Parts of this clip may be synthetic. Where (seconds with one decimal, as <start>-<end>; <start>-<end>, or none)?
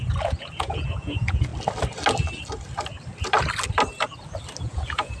0.0-1.5; 4.6-5.2